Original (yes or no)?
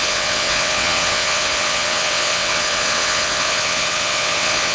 no